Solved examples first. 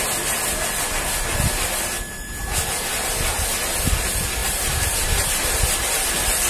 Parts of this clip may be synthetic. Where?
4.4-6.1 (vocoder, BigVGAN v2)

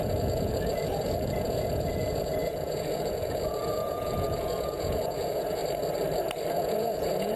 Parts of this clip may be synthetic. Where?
0.0-5.6 (vocoder, Vocos); 6.5-7.4

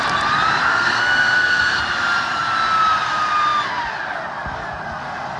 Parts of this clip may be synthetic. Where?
0.7-1.8 (codec, SNAC)

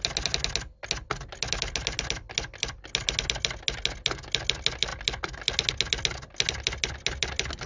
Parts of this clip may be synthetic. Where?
none

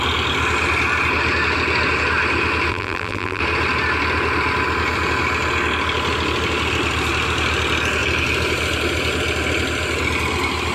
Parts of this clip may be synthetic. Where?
2.7-3.4 (vocoder, BigVGAN v2)

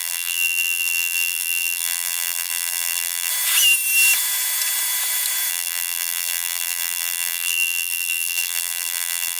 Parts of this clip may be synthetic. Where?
0.0-3.3 (vocoder, BigVGAN v2); 5.5-9.4

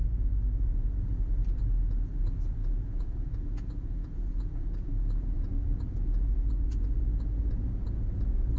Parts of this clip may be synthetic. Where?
2.6-7.4 (vocoder, Vocos)